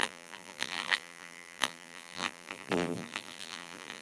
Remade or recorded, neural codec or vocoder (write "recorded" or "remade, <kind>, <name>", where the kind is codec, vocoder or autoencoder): remade, vocoder, BigVGAN v2